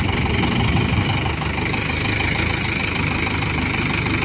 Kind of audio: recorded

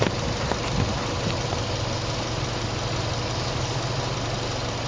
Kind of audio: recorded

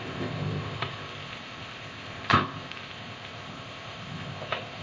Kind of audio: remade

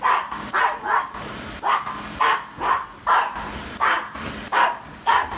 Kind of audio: recorded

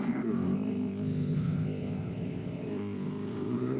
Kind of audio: remade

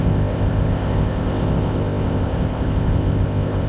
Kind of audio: remade